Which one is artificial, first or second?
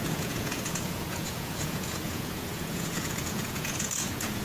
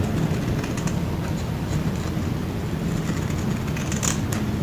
first